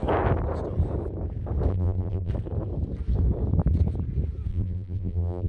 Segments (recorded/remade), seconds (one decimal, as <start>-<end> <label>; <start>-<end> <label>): 0.0-1.7 recorded; 1.7-2.3 remade; 2.3-4.5 recorded; 4.5-5.5 remade